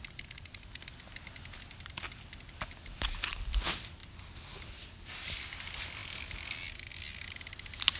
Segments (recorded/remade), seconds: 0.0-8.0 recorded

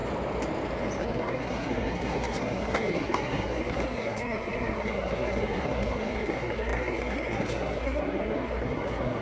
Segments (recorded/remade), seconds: 0.0-1.0 recorded; 1.0-9.2 remade

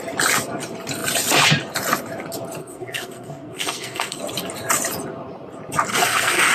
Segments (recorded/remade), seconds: 0.0-2.6 recorded; 2.6-4.2 remade; 4.2-5.9 recorded; 5.9-6.5 remade

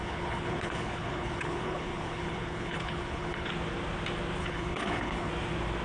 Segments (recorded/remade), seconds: 0.0-3.5 remade; 3.5-4.4 recorded; 4.4-5.3 remade; 5.3-5.8 recorded

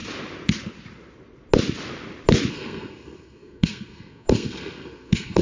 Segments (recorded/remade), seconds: 0.0-2.5 recorded; 2.5-5.4 remade

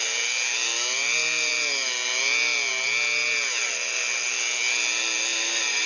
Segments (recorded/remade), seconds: 0.0-5.3 recorded; 5.3-5.9 remade

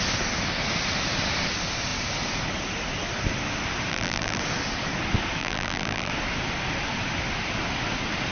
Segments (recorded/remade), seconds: 0.0-3.9 recorded; 3.9-4.4 remade; 4.4-5.4 recorded; 5.4-6.1 remade; 6.1-8.3 recorded

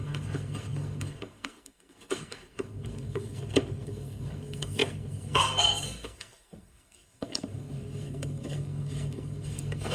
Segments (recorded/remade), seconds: 0.0-9.9 remade